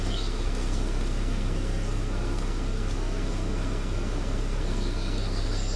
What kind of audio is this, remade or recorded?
remade